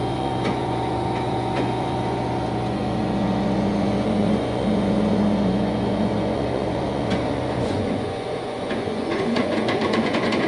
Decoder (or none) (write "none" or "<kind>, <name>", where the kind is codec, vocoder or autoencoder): vocoder, Vocos